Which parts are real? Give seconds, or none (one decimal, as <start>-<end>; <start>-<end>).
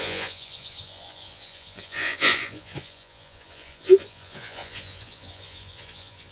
none